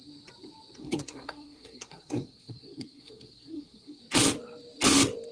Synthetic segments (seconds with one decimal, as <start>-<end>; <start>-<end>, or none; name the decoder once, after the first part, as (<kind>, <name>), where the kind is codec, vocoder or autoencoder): 0.8-4.0 (codec, SNAC)